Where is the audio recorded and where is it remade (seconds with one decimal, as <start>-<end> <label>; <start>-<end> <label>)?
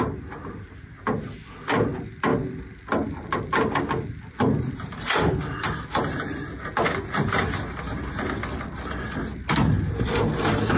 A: 0.0-10.8 recorded